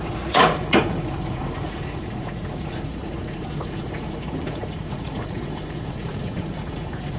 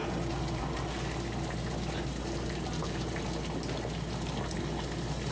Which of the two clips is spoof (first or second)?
first